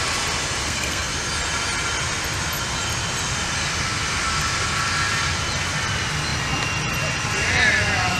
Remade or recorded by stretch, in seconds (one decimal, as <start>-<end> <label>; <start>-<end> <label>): 0.0-0.6 recorded; 0.6-1.1 remade; 1.1-8.2 recorded